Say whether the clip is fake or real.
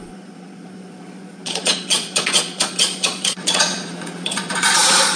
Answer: fake